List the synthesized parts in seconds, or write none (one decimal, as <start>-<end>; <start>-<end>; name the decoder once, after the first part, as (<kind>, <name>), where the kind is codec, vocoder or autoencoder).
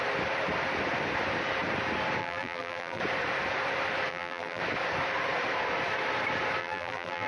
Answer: 2.2-3.0 (vocoder, BigVGAN v2); 4.1-4.6; 6.6-7.3